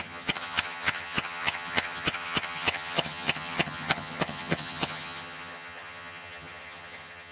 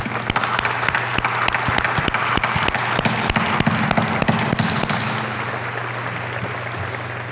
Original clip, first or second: second